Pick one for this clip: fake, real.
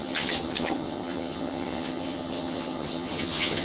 fake